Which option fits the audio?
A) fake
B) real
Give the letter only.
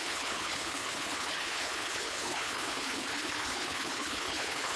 A